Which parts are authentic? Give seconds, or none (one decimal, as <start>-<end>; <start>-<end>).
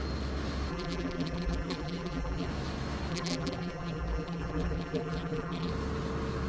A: 0.0-0.7; 2.5-3.1; 5.7-6.5